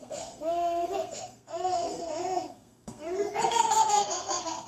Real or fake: fake